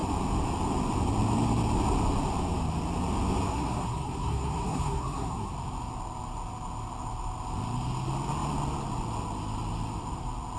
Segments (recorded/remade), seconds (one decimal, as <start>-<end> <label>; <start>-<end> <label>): 0.0-3.5 recorded; 3.5-5.5 remade; 5.5-10.6 recorded